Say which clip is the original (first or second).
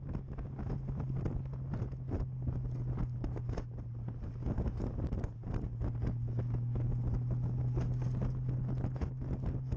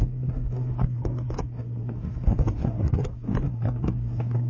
first